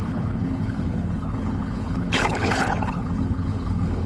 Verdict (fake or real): fake